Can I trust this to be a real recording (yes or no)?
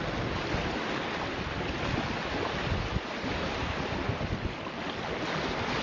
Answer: yes